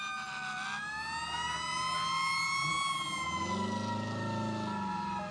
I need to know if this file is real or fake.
real